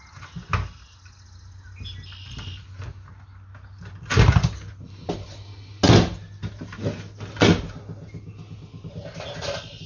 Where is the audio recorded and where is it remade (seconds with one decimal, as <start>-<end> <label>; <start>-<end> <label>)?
0.0-9.9 recorded